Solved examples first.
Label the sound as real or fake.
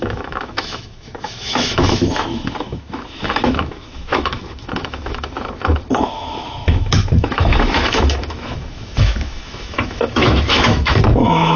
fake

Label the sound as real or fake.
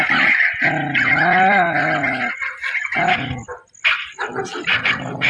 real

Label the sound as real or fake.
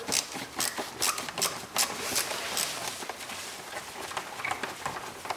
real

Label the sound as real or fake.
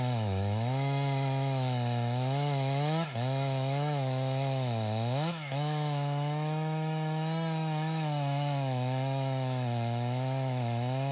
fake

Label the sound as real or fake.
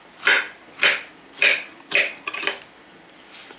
real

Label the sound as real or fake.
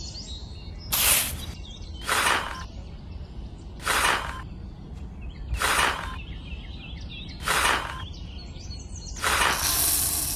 real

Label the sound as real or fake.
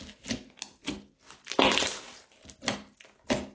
real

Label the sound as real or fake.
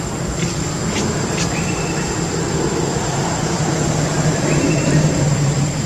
fake